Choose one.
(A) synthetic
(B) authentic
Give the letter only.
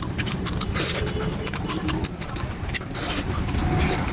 A